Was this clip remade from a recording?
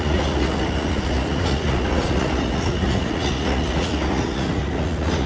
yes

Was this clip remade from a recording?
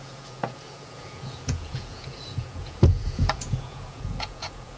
yes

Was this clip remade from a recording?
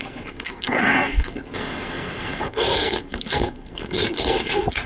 yes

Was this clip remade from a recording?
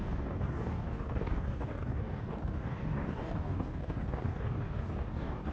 yes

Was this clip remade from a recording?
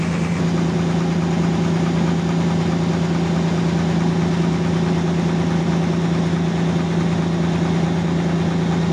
no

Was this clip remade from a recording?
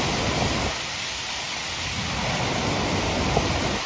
yes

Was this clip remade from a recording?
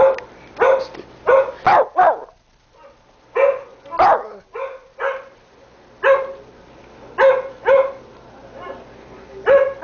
no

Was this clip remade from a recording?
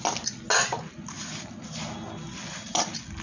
no